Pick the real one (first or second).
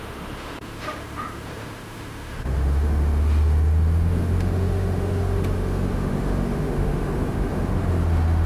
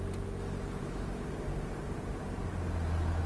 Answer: second